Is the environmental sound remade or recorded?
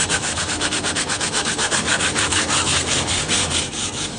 remade